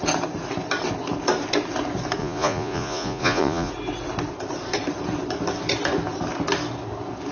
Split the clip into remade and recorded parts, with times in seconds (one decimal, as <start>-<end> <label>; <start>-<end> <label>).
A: 0.0-2.2 recorded; 2.2-3.7 remade; 3.7-7.3 recorded